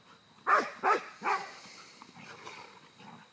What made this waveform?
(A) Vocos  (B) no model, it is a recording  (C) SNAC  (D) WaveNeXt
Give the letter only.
B